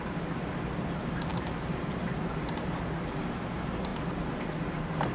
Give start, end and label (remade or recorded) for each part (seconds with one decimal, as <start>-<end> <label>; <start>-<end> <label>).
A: 0.0-1.3 recorded; 1.3-2.6 remade; 2.6-5.1 recorded